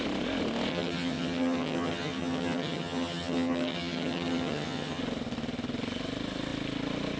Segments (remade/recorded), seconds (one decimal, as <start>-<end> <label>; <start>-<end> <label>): 0.0-0.7 recorded; 0.7-5.0 remade; 5.0-7.2 recorded

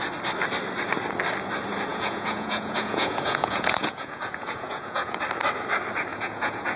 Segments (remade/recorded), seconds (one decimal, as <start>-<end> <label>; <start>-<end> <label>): 0.0-1.9 recorded; 1.9-5.2 remade; 5.2-6.1 recorded; 6.1-6.8 remade

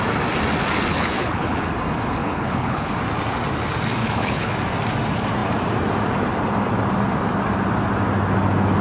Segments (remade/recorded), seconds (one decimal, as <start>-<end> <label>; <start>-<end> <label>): 0.0-0.9 recorded; 0.9-1.6 remade; 1.6-2.2 recorded; 2.2-2.9 remade; 2.9-4.0 recorded; 4.0-4.5 remade; 4.5-8.8 recorded